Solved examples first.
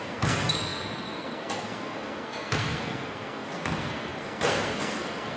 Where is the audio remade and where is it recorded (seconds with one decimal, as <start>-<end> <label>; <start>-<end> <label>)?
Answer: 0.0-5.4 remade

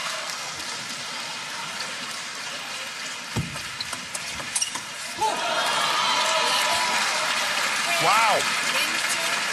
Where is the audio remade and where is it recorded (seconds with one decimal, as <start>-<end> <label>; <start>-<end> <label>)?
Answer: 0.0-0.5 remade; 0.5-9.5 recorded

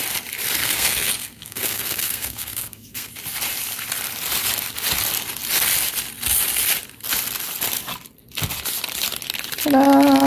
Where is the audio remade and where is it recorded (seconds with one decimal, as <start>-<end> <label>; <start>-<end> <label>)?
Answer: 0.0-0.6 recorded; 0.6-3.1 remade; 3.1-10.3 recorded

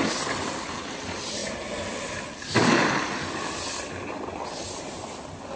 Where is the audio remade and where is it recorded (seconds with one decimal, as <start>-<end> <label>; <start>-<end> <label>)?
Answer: 0.0-5.6 recorded